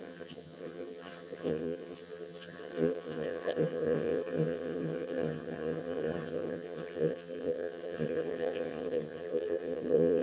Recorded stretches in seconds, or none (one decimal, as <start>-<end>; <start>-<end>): none